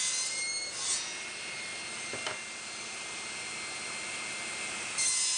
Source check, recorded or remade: recorded